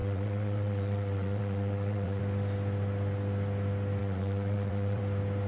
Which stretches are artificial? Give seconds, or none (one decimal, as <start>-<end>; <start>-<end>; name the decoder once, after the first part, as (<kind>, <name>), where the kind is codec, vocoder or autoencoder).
0.0-2.2 (vocoder, WaveNeXt); 4.0-5.0